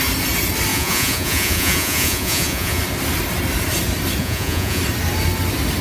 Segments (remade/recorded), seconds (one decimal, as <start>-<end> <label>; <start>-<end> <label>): 0.0-0.7 recorded; 0.7-2.8 remade; 2.8-4.2 recorded; 4.2-4.8 remade; 4.8-5.8 recorded